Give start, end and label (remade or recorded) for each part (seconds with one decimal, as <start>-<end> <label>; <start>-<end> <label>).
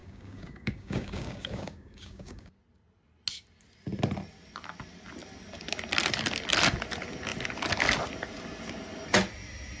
0.0-2.5 remade; 2.5-9.8 recorded